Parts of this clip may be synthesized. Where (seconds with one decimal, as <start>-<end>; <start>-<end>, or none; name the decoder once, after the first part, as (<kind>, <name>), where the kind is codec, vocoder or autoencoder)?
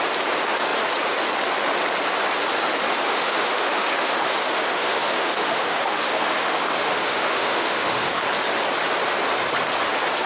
3.1-8.2 (autoencoder, DAC-VAE)